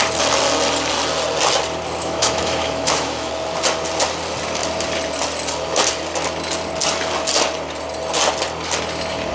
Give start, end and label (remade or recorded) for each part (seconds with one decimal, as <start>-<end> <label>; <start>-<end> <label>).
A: 0.0-2.0 recorded; 2.0-3.3 remade; 3.3-9.3 recorded